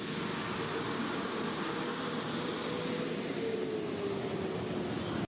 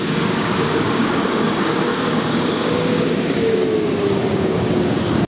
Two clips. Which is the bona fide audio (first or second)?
first